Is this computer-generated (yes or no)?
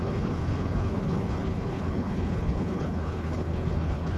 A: yes